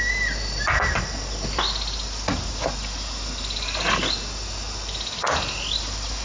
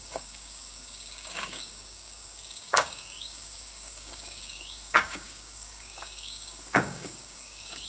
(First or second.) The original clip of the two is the first